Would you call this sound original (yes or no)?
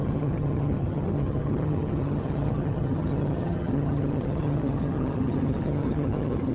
no